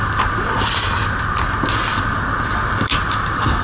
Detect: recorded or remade recorded